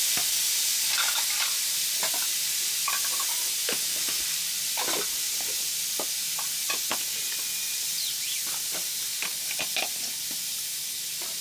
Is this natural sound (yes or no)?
yes